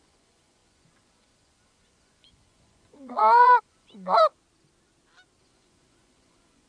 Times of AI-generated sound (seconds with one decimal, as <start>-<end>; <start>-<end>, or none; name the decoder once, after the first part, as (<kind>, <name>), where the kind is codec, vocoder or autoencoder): 0.0-4.2 (vocoder, Vocos); 5.4-6.7